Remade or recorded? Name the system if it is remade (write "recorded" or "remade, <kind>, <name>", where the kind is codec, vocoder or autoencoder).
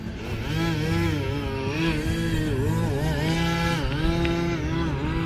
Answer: recorded